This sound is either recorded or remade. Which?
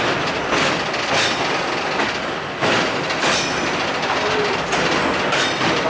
recorded